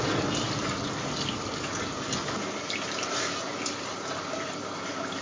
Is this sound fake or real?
real